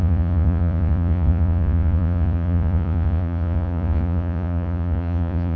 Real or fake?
fake